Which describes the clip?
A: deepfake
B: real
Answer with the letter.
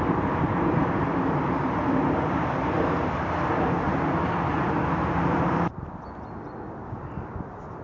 B